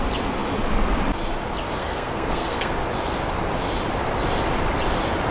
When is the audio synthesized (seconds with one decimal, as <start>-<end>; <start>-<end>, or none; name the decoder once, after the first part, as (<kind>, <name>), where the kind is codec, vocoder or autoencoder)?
1.8-2.7 (codec, SNAC)